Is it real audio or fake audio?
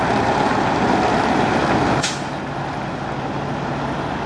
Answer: real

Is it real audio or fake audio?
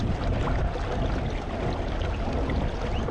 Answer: real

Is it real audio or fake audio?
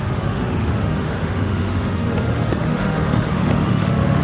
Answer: fake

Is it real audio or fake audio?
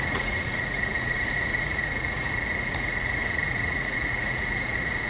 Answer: fake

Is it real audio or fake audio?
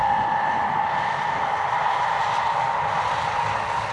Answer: real